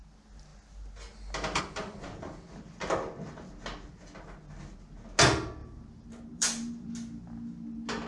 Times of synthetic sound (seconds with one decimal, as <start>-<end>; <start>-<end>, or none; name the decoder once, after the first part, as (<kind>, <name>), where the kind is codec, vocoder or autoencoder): 5.6-6.9 (vocoder, BigVGAN v2)